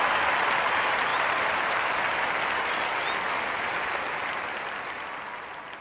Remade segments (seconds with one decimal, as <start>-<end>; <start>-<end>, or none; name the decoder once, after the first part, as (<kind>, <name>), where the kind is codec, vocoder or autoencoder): none